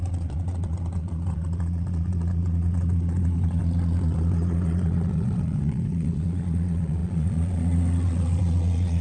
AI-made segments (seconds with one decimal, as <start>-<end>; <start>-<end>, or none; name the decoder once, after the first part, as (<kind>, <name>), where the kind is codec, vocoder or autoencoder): 0.0-9.0 (vocoder, Vocos)